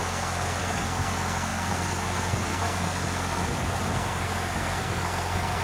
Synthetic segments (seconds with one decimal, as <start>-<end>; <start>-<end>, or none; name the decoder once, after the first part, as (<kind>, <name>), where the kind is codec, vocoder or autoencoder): 0.0-5.6 (codec, SNAC)